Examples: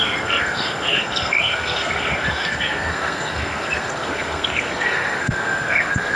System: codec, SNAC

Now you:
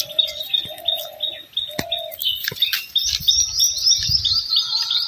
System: none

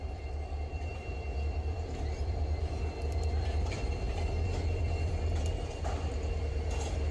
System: vocoder, BigVGAN v2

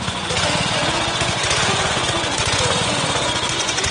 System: vocoder, Vocos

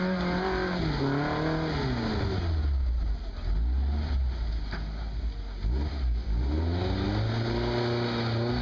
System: none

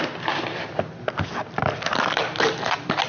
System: none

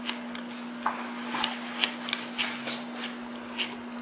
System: none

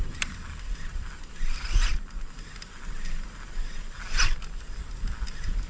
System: none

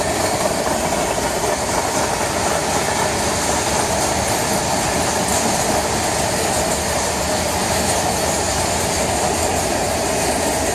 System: none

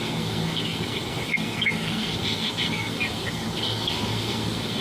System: codec, SNAC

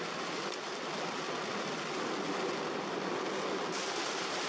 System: vocoder, BigVGAN v2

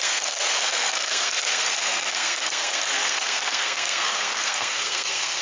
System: codec, SNAC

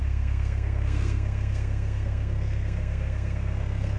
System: codec, SNAC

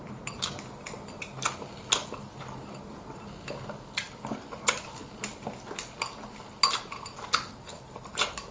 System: none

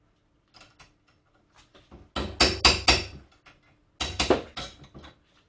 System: none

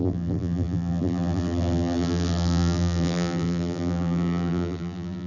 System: vocoder, BigVGAN v2